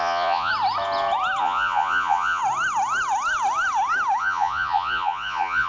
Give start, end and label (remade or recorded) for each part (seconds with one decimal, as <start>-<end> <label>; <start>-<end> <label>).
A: 0.0-0.5 remade; 0.5-1.4 recorded; 1.4-2.4 remade; 2.4-4.2 recorded; 4.2-5.7 remade